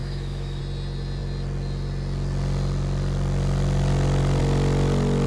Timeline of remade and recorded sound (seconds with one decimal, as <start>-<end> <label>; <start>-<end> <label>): 0.0-0.6 remade; 0.6-5.3 recorded